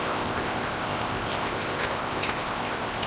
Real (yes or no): no